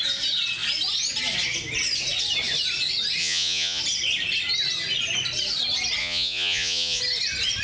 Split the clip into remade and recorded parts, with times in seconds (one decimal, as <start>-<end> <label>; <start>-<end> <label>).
0.0-3.2 recorded; 3.2-3.8 remade; 3.8-6.0 recorded; 6.0-7.0 remade; 7.0-7.6 recorded